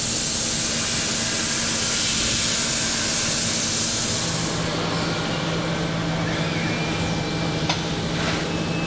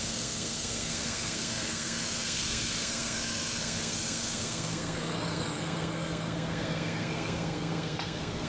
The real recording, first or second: first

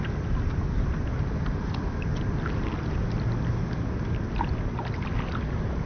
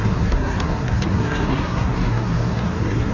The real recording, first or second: first